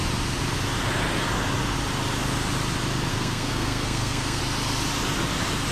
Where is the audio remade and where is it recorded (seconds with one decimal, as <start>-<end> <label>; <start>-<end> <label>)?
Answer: 0.0-3.1 recorded; 3.1-4.4 remade; 4.4-5.7 recorded